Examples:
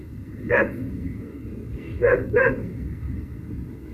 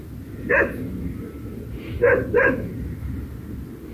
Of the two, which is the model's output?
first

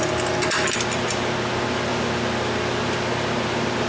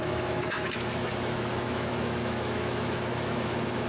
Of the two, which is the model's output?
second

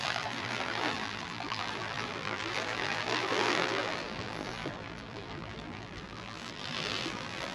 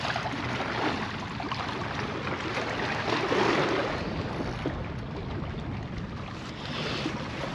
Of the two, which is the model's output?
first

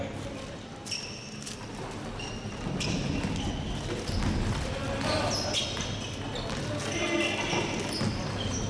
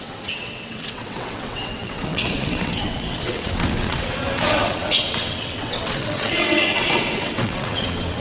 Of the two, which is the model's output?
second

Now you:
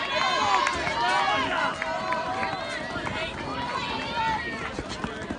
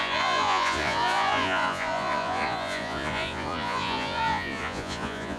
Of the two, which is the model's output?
second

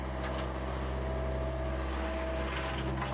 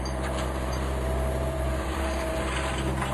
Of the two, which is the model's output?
second